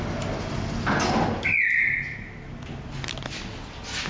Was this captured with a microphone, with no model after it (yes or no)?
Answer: yes